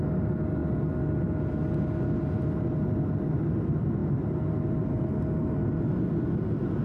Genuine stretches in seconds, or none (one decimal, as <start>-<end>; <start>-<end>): 0.0-6.8